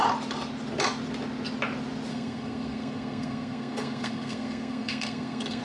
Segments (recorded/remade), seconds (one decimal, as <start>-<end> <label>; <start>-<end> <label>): 0.0-2.1 recorded; 2.1-5.6 remade